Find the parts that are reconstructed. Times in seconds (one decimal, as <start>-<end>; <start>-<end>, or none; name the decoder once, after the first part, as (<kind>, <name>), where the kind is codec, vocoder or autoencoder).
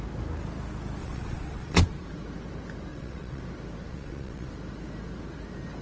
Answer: 1.0-1.8 (vocoder, WaveNeXt); 2.9-3.4; 3.9-4.5